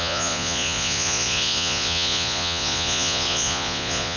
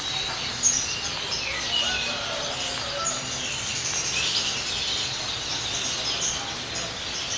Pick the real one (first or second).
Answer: second